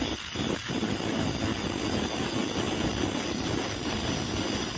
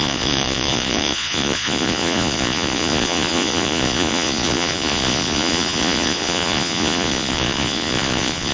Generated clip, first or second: second